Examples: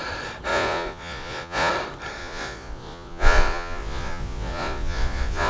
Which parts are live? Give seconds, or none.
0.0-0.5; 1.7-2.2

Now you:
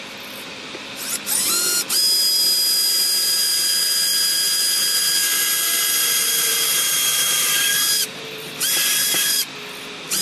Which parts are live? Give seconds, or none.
0.0-6.0; 9.5-10.2

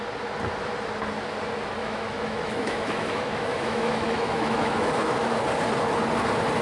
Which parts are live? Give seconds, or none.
0.0-1.8; 5.4-6.6